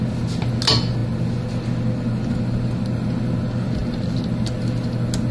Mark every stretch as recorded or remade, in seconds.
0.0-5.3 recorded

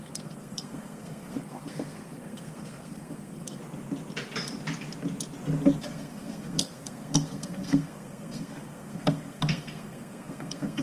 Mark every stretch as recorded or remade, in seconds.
0.0-3.6 remade; 3.6-5.8 recorded; 5.8-10.8 remade

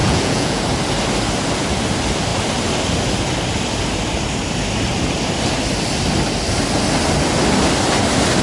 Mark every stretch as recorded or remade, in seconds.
0.0-0.6 remade; 0.6-8.4 recorded

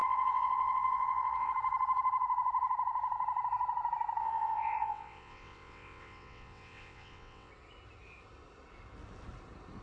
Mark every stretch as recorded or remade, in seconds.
0.0-1.5 remade; 1.5-4.2 recorded; 4.2-7.5 remade; 7.5-9.8 recorded

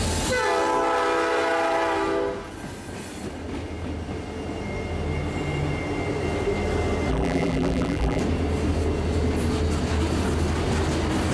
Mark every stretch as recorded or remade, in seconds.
0.0-7.1 recorded; 7.1-8.2 remade; 8.2-11.3 recorded

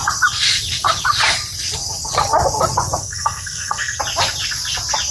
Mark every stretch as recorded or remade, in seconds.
0.0-3.0 recorded; 3.0-4.0 remade; 4.0-5.1 recorded